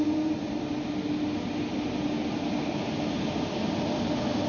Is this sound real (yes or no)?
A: yes